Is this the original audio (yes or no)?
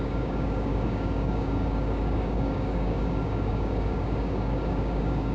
no